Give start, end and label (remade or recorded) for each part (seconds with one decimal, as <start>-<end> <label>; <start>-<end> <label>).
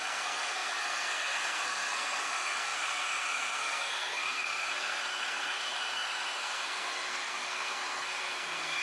0.0-8.8 remade